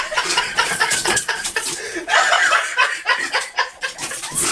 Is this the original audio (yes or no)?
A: no